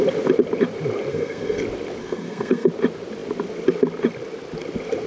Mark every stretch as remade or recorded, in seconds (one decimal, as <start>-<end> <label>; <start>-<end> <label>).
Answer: 0.0-1.1 recorded; 1.1-1.6 remade; 1.6-2.0 recorded; 2.0-2.7 remade; 2.7-5.1 recorded